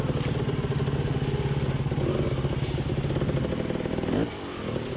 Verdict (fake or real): real